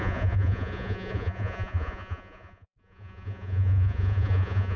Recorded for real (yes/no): no